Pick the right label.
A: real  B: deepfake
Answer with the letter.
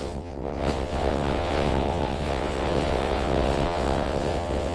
B